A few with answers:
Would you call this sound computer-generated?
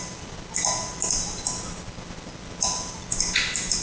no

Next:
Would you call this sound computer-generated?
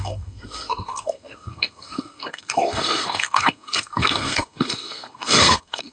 yes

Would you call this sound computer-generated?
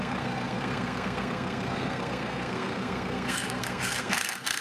yes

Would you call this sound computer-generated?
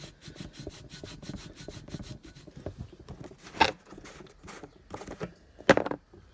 no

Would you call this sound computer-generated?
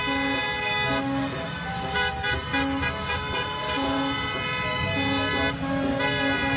no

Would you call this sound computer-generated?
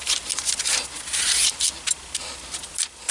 no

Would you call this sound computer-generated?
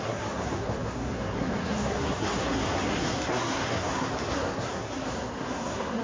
yes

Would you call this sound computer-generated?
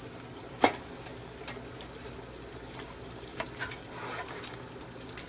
no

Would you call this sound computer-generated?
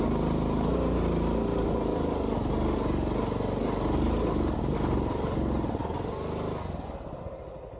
no